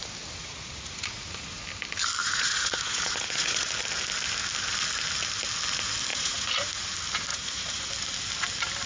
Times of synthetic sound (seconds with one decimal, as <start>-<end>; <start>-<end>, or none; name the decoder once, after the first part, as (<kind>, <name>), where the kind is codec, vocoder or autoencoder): 0.4-1.6 (vocoder, Vocos); 2.2-3.7; 6.1-6.8; 7.3-7.9